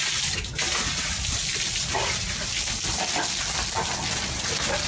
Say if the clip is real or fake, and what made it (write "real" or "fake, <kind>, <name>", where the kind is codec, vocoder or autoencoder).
real